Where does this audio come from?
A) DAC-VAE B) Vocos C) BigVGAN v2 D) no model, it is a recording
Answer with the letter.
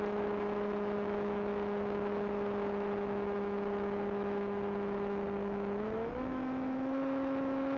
A